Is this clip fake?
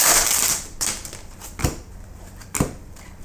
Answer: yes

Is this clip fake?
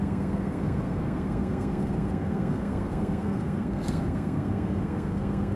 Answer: yes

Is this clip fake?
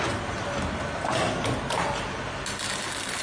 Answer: no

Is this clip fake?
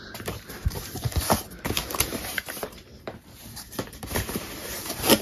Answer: yes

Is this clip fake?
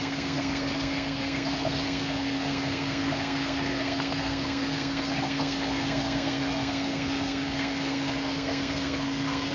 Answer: yes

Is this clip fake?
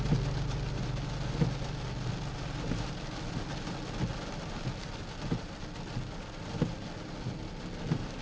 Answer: no